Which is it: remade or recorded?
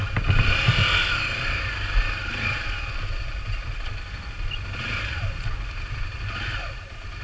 recorded